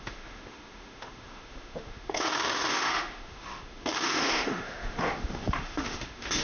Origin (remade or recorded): remade